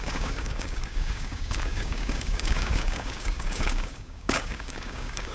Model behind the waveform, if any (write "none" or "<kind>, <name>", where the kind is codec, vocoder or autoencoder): codec, DAC